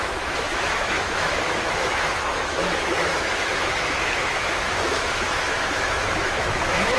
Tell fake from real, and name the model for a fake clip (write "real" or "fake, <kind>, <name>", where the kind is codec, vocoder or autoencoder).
fake, autoencoder, DAC-VAE